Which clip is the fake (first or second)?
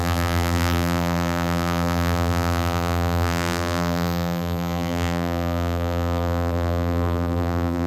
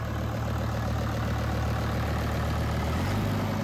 first